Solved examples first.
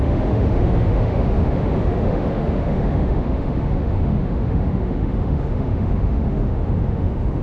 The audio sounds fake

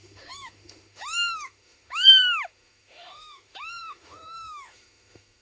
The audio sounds fake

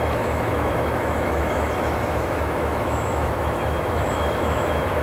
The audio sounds fake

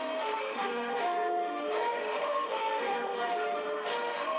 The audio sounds fake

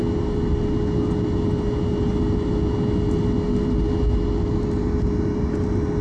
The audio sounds real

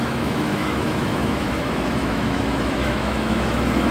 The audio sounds fake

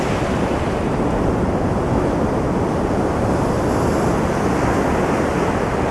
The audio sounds real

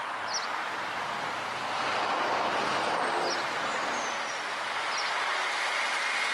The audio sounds real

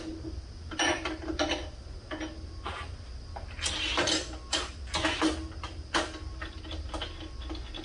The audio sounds real